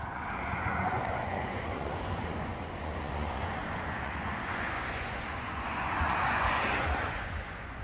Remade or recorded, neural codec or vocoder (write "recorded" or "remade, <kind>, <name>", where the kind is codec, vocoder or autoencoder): remade, vocoder, Vocos